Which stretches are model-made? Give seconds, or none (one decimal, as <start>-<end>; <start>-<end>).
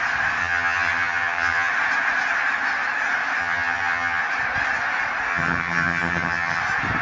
0.4-1.7; 3.4-4.2; 5.3-6.6